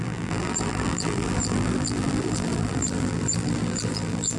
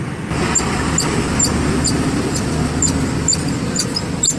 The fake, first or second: first